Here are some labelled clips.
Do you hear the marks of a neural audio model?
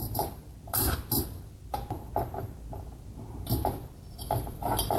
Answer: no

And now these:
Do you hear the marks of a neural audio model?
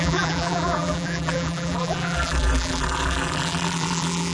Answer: yes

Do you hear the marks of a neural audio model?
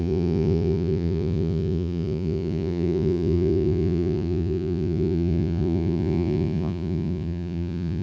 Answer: yes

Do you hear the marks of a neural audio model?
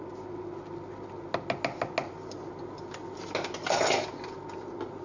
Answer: no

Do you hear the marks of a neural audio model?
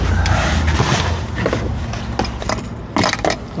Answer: no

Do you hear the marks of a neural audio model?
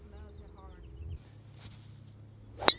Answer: no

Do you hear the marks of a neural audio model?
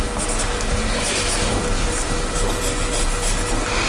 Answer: no